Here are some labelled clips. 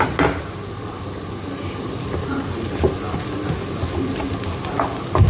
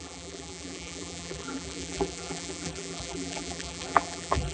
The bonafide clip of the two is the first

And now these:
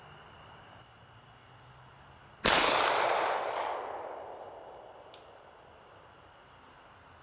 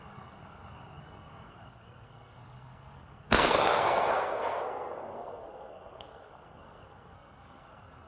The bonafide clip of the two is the first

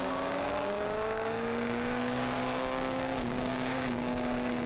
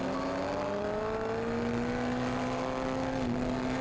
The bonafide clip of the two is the second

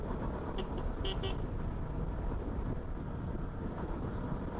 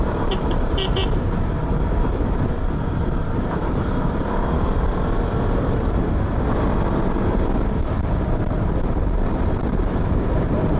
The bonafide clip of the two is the first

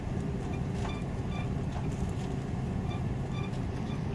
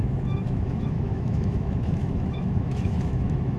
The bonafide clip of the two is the first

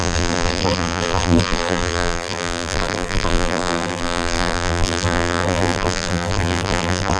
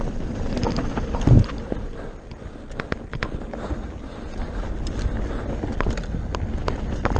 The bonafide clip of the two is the second